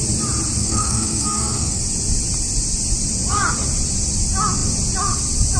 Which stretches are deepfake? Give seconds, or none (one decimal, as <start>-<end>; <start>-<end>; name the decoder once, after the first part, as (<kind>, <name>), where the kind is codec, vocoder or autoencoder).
0.6-1.8 (codec, SNAC)